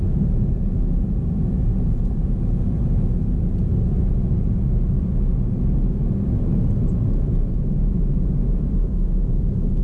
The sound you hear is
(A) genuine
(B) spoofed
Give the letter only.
A